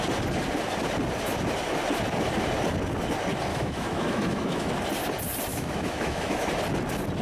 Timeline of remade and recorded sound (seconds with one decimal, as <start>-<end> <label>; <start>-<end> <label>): 0.0-3.5 recorded; 3.5-4.7 remade; 4.7-5.5 recorded; 5.5-6.5 remade; 6.5-7.2 recorded